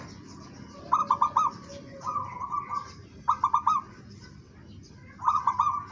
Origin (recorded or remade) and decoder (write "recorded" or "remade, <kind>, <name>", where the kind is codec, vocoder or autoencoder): recorded